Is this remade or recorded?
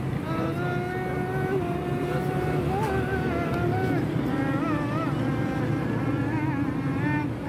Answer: recorded